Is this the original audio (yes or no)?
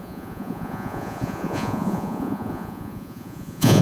no